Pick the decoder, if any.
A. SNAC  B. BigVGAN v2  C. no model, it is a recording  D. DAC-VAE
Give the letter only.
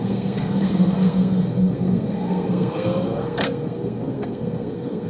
A